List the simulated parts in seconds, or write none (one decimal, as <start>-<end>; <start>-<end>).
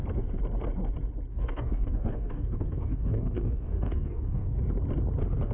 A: 1.3-4.6